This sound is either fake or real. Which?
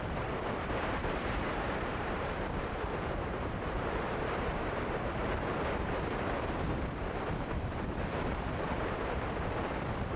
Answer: fake